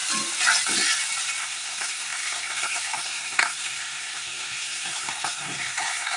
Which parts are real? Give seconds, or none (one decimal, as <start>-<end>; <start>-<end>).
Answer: 0.0-1.4